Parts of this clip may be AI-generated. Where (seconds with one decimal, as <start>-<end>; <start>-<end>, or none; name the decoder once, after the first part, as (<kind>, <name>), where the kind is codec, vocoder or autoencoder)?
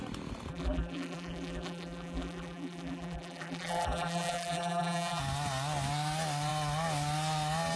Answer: 0.5-5.2 (vocoder, BigVGAN v2)